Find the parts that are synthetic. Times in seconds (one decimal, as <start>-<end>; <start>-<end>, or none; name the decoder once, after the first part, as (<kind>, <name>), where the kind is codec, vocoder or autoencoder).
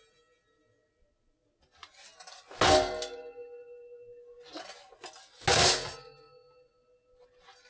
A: none